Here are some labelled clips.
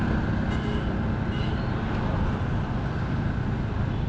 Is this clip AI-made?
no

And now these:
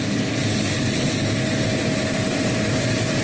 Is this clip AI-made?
no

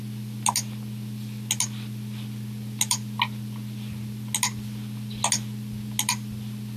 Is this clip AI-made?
no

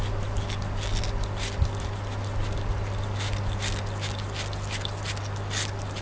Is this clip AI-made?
no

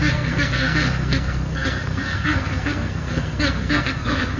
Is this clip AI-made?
yes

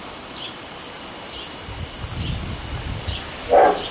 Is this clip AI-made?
no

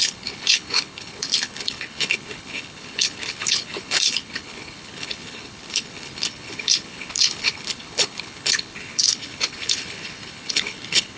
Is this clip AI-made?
yes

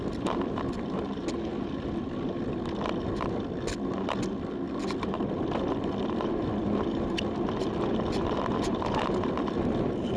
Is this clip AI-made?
no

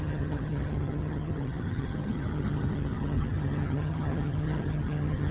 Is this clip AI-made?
yes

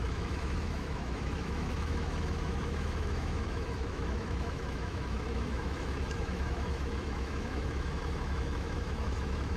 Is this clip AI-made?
yes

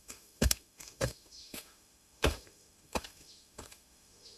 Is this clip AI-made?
yes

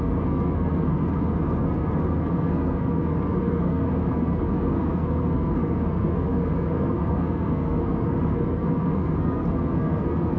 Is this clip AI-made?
yes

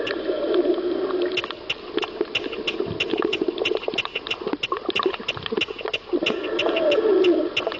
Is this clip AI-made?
no